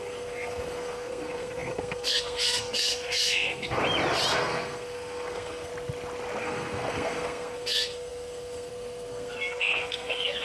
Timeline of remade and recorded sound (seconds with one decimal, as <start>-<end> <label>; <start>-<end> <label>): 0.0-3.8 remade; 3.8-4.3 recorded; 4.3-5.7 remade; 5.7-6.4 recorded; 6.4-10.4 remade